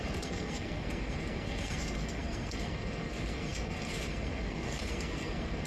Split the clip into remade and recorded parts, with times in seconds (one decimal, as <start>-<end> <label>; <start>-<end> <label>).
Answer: 0.0-5.7 remade